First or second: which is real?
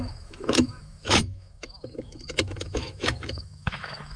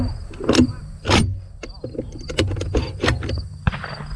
second